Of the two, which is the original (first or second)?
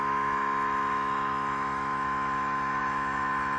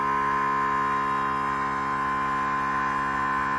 second